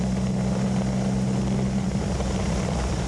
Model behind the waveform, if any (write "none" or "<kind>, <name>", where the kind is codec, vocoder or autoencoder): none